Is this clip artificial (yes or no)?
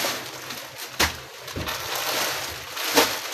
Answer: no